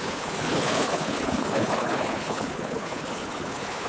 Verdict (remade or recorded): remade